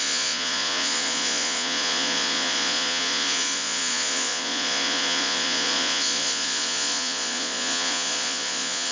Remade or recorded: remade